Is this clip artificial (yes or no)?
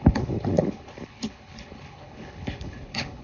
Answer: yes